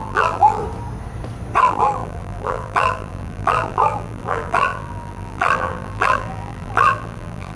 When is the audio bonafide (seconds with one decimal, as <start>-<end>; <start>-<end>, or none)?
0.6-1.6